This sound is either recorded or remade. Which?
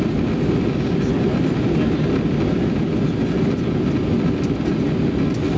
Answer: recorded